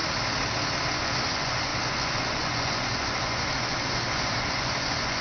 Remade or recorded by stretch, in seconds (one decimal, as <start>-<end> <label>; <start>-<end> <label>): 0.0-0.9 recorded; 0.9-5.2 remade